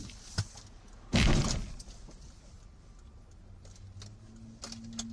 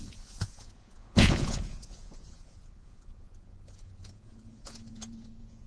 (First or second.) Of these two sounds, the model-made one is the second